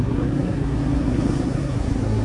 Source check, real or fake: fake